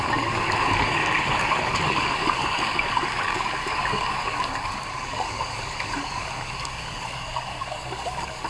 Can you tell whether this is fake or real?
fake